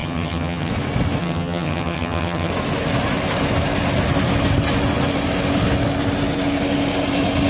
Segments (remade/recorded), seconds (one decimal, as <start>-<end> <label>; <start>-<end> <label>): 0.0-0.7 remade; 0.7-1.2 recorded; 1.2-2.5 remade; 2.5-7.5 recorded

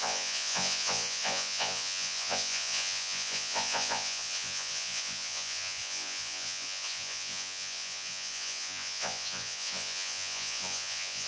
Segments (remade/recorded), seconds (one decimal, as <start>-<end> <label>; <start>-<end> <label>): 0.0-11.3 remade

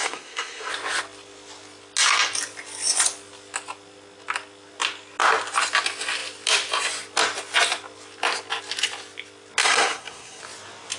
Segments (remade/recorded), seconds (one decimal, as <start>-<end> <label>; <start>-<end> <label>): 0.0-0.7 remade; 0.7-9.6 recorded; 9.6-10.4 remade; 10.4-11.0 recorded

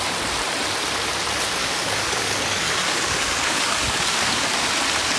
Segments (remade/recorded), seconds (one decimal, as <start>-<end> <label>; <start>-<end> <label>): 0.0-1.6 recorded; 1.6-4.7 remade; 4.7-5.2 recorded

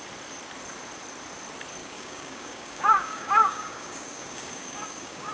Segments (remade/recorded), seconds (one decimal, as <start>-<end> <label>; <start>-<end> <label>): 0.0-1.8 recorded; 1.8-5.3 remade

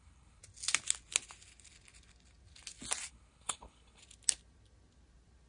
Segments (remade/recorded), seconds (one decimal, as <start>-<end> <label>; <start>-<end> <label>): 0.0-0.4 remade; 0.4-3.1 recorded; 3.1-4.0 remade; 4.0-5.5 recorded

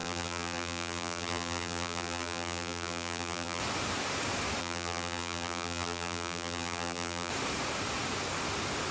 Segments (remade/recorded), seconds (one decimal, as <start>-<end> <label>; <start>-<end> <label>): 0.0-3.6 remade; 3.6-4.6 recorded; 4.6-7.3 remade; 7.3-8.9 recorded

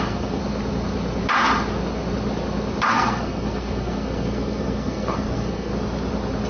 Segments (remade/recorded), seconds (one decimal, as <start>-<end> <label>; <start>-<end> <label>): 0.0-0.4 remade; 0.4-2.9 recorded; 2.9-5.7 remade; 5.7-6.5 recorded